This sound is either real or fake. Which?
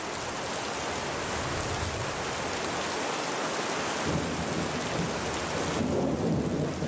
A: real